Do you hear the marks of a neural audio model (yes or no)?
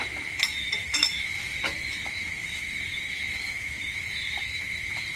yes